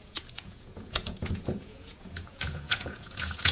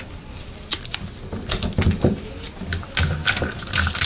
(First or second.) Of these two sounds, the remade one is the first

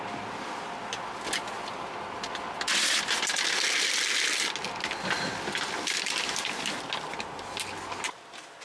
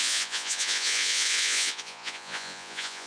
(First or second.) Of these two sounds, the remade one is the second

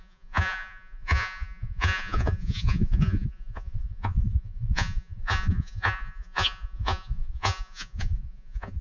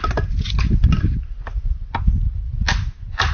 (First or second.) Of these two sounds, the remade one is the first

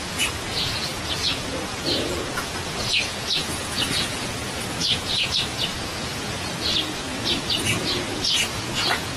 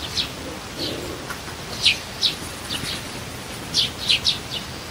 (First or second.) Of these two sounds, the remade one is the first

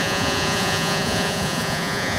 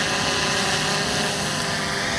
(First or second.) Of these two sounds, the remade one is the first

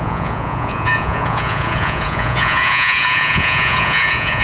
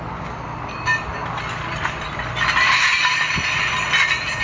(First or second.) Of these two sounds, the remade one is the first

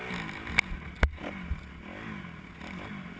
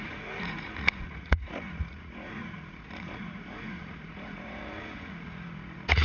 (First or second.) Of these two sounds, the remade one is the second